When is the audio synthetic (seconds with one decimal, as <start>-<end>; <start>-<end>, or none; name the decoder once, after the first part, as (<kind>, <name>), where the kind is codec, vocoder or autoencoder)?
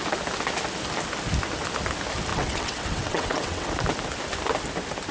2.3-3.7 (vocoder, WaveNeXt)